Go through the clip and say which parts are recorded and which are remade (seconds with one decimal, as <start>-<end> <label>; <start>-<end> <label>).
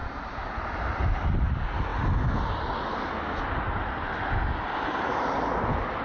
0.0-6.0 recorded